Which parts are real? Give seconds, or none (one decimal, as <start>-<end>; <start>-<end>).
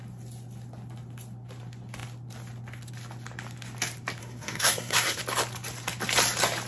0.0-4.2; 5.2-6.7